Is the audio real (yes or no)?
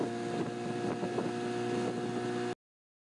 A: yes